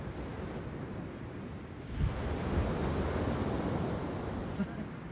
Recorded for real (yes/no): yes